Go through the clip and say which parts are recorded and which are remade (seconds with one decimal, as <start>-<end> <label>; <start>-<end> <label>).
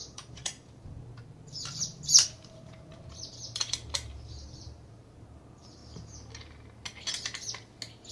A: 0.0-5.8 remade; 5.8-8.1 recorded